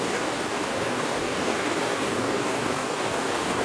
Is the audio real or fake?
fake